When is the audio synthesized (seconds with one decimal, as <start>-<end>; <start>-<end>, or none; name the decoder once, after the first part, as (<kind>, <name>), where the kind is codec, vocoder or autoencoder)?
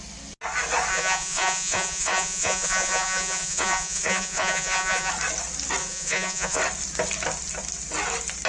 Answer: 0.9-5.1 (vocoder, Vocos); 5.8-6.6